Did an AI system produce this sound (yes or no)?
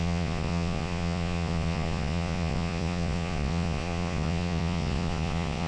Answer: yes